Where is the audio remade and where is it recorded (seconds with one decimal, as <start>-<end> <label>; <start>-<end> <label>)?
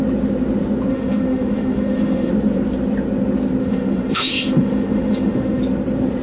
0.0-0.9 recorded; 0.9-2.3 remade; 2.3-3.6 recorded; 3.6-5.6 remade; 5.6-6.2 recorded